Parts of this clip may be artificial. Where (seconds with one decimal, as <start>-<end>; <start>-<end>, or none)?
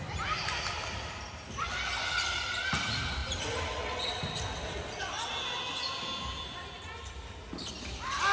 none